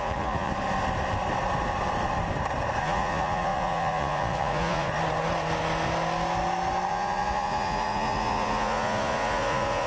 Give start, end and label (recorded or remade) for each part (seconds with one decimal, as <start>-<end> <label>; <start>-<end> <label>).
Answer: 0.0-0.5 remade; 0.5-2.8 recorded; 2.8-4.9 remade; 4.9-6.9 recorded; 6.9-9.9 remade